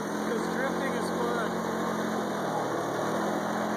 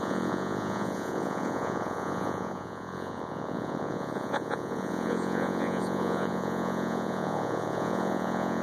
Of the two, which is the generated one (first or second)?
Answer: second